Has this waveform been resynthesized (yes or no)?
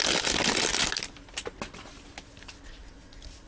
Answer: no